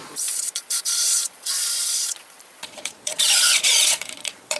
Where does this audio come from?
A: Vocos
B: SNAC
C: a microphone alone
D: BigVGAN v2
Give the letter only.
A